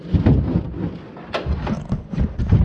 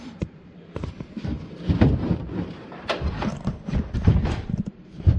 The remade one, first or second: second